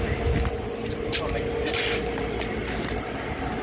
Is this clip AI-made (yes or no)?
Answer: no